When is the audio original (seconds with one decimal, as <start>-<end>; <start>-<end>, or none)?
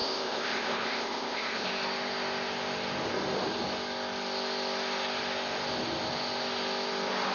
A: 1.7-7.3